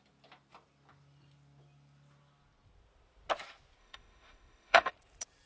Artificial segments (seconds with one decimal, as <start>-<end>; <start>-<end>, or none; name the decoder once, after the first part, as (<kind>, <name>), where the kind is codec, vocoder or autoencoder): 3.8-4.9 (autoencoder, DAC-VAE)